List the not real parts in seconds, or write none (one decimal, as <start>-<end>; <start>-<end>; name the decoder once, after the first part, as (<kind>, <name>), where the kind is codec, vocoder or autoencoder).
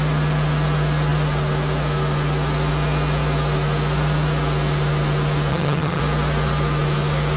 5.5-6.0 (vocoder, HiFi-GAN)